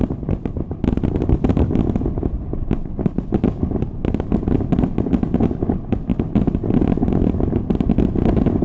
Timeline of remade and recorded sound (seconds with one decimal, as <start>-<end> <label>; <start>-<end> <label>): 0.0-8.6 recorded